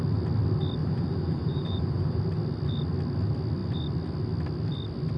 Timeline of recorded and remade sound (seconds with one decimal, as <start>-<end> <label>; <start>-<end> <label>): 0.0-0.8 recorded; 0.8-2.2 remade; 2.2-5.2 recorded